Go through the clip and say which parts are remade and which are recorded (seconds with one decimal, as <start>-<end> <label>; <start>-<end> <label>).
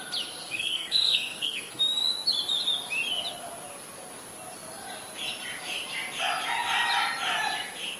0.0-0.4 recorded; 0.4-1.8 remade; 1.8-8.0 recorded